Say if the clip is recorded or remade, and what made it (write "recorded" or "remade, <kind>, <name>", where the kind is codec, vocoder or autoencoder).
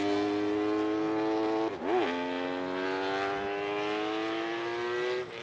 recorded